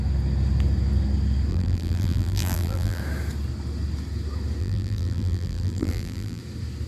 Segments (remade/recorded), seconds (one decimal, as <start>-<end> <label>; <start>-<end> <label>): 0.0-1.5 recorded; 1.5-3.0 remade; 3.0-4.6 recorded; 4.6-6.4 remade; 6.4-6.9 recorded